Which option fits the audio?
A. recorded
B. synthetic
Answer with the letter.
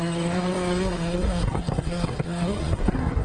B